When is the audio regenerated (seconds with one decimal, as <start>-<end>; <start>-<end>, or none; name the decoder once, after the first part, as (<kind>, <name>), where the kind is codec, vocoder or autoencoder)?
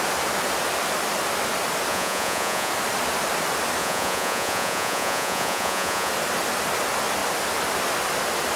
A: 1.9-2.7 (vocoder, Vocos); 3.8-6.1